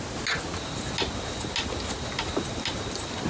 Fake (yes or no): no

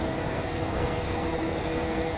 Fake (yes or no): yes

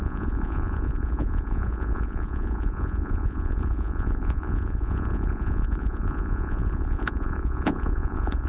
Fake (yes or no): yes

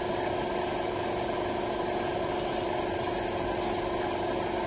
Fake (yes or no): no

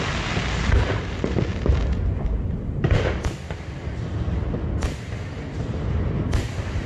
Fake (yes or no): no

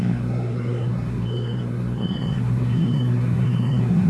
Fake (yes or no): yes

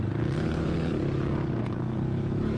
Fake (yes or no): yes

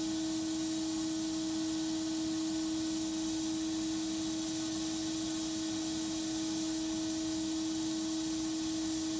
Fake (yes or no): no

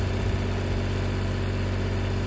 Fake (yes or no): no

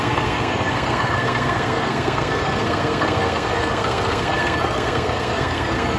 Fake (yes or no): yes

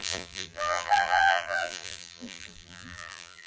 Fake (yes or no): yes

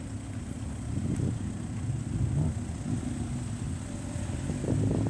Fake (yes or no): no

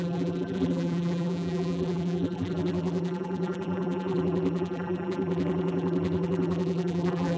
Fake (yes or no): yes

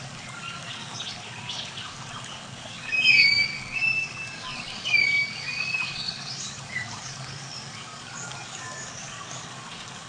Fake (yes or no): yes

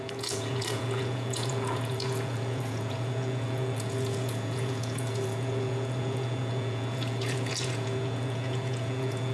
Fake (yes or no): yes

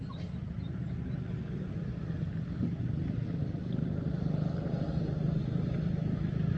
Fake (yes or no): no